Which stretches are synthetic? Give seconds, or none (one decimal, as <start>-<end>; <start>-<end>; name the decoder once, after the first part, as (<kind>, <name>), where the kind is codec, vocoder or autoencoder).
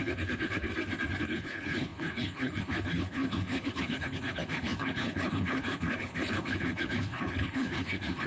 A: 0.0-0.7 (codec, HILCodec); 1.2-8.3